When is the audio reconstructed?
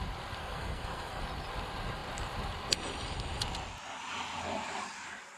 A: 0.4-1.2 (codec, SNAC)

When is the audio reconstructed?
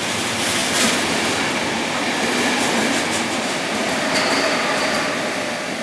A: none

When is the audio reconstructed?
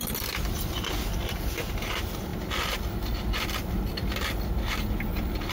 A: none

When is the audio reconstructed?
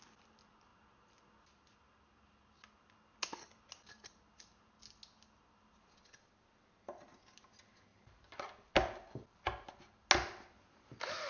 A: 7.9-9.7 (vocoder, BigVGAN v2)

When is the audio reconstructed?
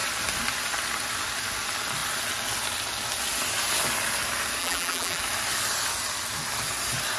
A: 4.6-5.2 (vocoder, BigVGAN v2)